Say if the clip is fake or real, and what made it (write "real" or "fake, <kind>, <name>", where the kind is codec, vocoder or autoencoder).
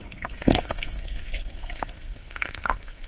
fake, codec, SNAC